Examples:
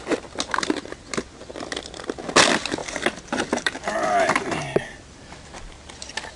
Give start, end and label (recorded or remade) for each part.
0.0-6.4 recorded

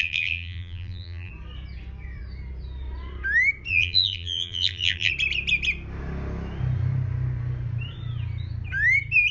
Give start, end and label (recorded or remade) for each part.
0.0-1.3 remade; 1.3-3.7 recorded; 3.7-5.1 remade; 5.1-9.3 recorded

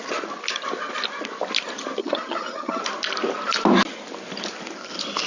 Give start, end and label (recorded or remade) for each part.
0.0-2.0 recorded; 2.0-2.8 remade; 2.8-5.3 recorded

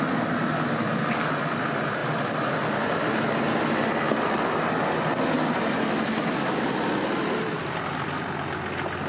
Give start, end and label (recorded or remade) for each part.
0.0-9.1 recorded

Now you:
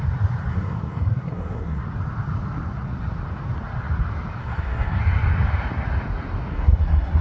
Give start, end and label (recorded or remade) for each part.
0.0-0.5 recorded; 0.5-1.8 remade; 1.8-4.4 recorded; 4.4-5.0 remade; 5.0-6.5 recorded; 6.5-7.2 remade